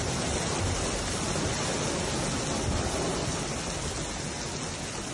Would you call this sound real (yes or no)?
yes